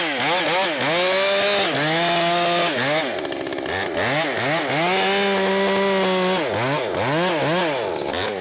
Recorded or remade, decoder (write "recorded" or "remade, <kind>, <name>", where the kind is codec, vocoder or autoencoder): recorded